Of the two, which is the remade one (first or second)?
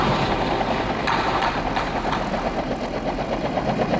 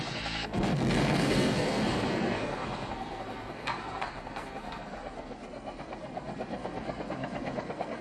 second